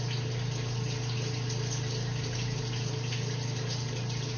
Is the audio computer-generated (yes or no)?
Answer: no